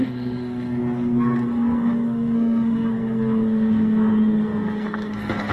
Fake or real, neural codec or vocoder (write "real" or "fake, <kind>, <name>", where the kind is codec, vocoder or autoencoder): fake, codec, SNAC